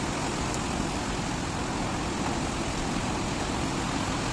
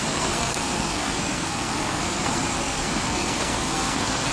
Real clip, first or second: first